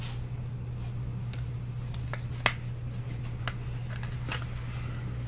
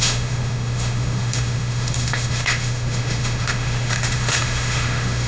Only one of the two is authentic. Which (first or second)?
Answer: first